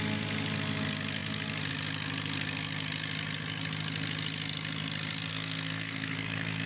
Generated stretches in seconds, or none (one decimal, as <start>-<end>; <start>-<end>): 5.3-6.7